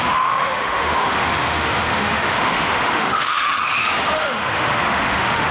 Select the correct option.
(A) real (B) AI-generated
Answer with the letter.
B